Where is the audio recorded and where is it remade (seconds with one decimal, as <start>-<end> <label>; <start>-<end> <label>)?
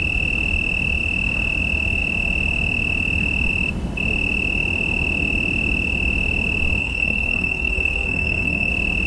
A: 0.0-6.8 recorded; 6.8-8.7 remade; 8.7-9.1 recorded